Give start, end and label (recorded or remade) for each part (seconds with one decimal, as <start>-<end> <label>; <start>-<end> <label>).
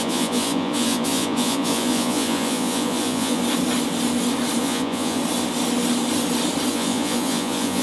0.0-3.4 remade; 3.4-4.6 recorded; 4.6-5.2 remade; 5.2-6.7 recorded; 6.7-7.8 remade